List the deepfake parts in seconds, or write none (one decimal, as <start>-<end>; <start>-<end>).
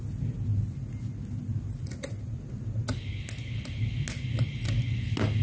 none